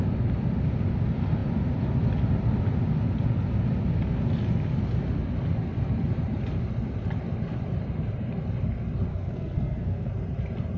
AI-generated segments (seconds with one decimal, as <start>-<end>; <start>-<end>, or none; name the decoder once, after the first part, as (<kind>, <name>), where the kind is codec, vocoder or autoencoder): 9.1-10.1 (codec, SNAC)